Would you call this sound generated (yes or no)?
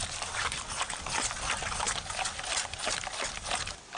no